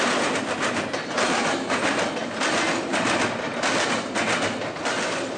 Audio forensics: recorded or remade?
recorded